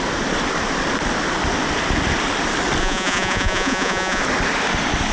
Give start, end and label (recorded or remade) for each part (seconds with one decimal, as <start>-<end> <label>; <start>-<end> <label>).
0.0-2.8 recorded; 2.8-4.2 remade; 4.2-5.1 recorded